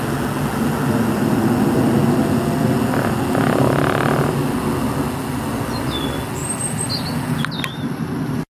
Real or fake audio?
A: real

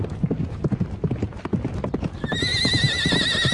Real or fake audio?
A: real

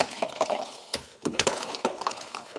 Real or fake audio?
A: fake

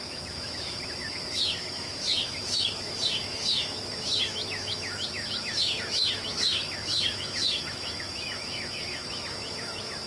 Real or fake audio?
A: fake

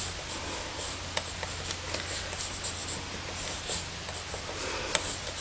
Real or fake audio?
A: real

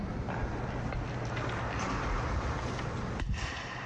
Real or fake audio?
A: real